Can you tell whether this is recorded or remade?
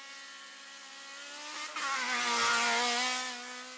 recorded